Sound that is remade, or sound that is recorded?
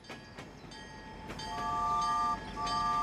recorded